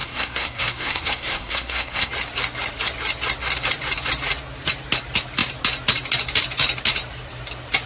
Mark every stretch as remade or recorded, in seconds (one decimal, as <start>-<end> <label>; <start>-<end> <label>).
0.0-2.1 remade; 2.1-7.8 recorded